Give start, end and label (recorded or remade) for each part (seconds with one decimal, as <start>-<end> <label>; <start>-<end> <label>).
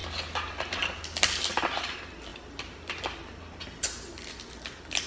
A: 0.0-5.1 recorded